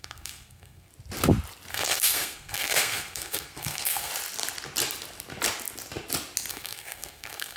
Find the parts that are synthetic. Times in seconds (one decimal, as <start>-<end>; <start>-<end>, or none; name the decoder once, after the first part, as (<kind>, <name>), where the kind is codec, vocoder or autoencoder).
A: 0.0-0.9 (codec, SNAC); 1.7-4.1; 6.5-7.6